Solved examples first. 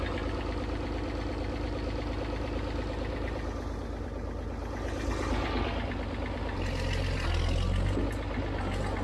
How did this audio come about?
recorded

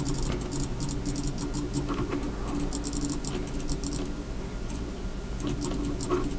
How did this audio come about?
recorded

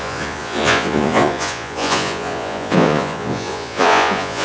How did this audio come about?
remade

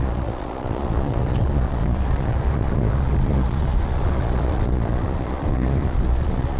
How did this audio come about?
remade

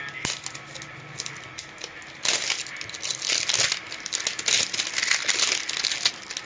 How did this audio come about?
recorded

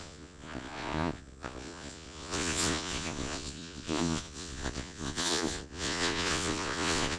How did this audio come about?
remade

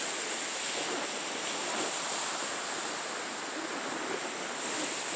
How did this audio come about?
recorded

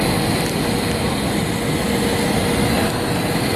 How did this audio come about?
recorded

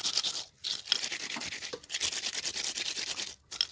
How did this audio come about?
recorded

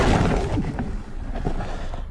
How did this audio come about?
recorded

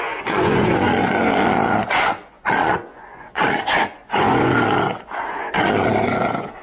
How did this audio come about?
remade